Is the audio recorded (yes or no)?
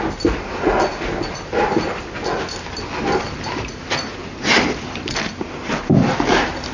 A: yes